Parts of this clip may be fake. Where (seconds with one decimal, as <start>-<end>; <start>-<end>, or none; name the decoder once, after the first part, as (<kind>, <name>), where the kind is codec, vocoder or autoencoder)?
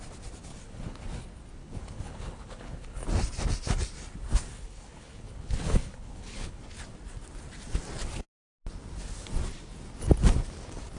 0.5-1.2 (codec, HILCodec); 1.6-3.0; 4.5-6.6